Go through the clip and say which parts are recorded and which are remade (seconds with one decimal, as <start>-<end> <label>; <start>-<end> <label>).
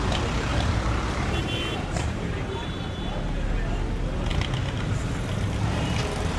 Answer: 0.0-0.5 recorded; 0.5-2.8 remade; 2.8-6.4 recorded